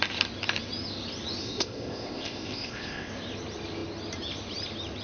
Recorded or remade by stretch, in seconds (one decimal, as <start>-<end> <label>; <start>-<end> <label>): 0.0-1.4 recorded; 1.4-3.1 remade; 3.1-5.0 recorded